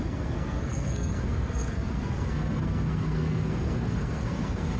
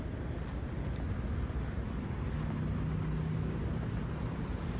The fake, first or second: first